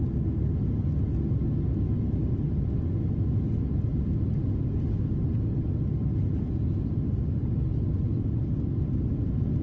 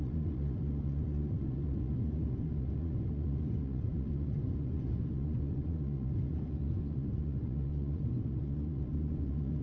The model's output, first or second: second